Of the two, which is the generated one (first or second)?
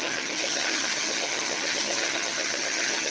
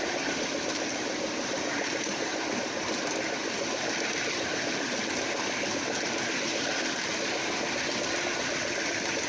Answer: first